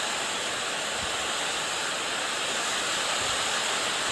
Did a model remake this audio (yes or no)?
no